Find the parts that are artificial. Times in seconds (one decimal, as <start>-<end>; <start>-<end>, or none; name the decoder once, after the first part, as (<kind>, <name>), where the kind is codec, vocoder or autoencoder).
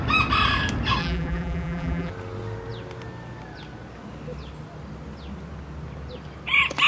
1.0-2.1 (vocoder, BigVGAN v2)